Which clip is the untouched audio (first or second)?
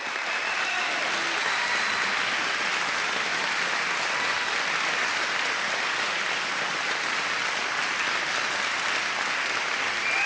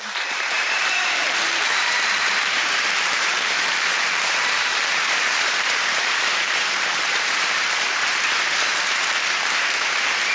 first